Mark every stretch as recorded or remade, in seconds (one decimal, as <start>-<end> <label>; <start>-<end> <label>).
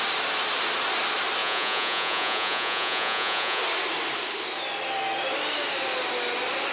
0.0-1.4 recorded; 1.4-3.6 remade; 3.6-6.7 recorded